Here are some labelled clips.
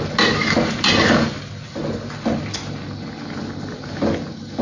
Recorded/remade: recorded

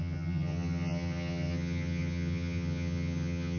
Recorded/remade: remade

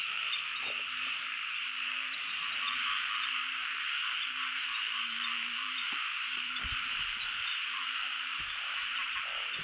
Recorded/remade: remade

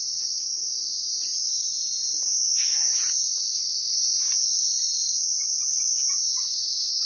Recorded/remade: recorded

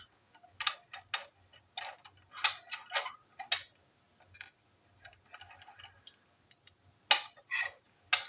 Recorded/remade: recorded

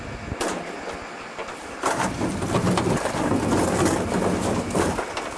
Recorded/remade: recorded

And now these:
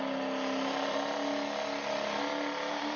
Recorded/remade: recorded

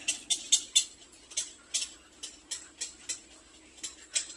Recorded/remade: recorded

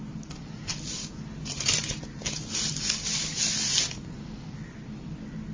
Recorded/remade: recorded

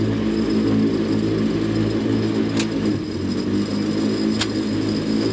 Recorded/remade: recorded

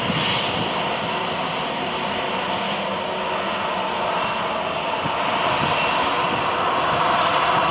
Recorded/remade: recorded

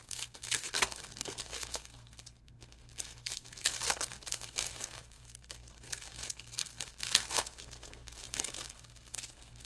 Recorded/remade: remade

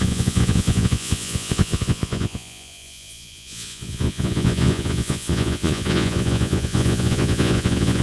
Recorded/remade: remade